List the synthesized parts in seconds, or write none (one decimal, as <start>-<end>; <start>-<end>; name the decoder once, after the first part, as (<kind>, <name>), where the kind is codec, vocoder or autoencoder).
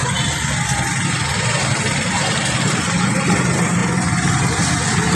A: 2.1-3.8 (vocoder, BigVGAN v2)